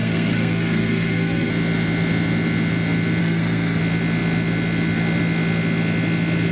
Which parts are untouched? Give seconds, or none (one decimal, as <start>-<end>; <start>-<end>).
1.5-3.2; 3.8-6.5